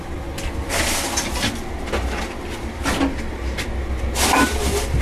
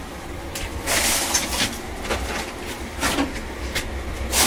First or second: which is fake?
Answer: second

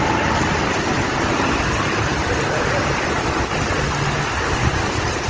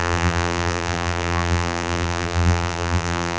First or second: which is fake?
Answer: second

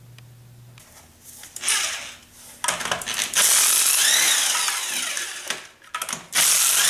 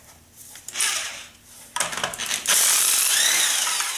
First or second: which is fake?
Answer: second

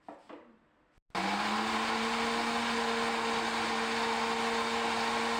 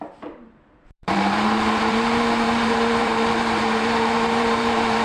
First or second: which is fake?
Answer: second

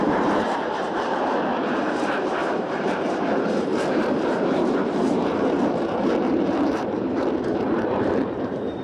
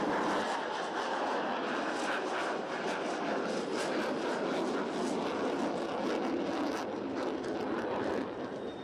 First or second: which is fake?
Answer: first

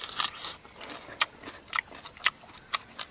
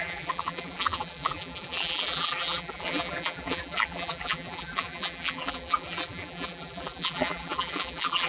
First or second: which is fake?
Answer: second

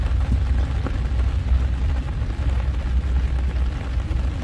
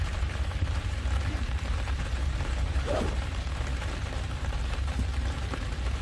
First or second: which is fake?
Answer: second